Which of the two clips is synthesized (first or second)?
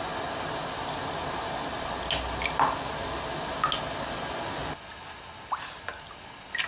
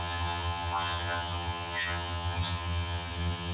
second